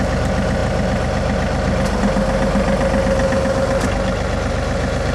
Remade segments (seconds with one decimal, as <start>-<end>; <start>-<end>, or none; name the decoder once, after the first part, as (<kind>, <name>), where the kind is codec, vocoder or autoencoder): none